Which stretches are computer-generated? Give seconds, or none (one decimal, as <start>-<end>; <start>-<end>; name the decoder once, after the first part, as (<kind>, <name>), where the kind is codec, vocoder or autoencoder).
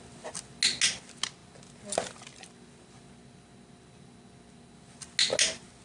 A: none